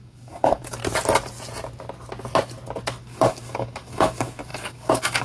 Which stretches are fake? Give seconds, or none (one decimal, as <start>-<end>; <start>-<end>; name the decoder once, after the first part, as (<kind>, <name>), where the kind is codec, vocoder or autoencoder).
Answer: 0.0-0.8 (codec, DAC); 3.0-5.2